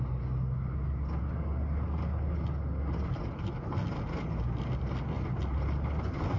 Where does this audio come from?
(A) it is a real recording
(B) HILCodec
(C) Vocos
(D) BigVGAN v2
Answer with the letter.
A